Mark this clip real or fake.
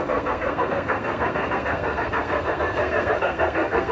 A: fake